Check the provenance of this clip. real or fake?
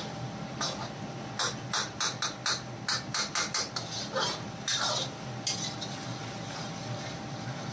real